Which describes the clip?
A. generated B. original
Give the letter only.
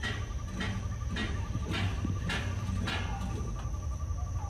B